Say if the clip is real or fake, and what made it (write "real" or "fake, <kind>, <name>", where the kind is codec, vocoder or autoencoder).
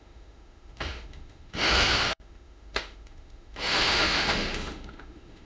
fake, autoencoder, DAC-VAE